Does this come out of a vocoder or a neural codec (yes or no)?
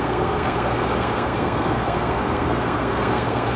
yes